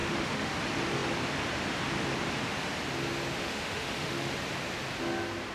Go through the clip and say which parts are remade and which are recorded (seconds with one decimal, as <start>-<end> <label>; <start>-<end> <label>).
0.0-0.6 remade; 0.6-3.4 recorded; 3.4-4.3 remade; 4.3-5.5 recorded